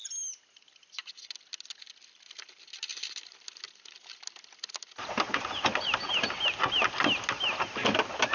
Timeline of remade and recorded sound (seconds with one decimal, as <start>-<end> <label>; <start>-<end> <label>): 0.0-8.3 recorded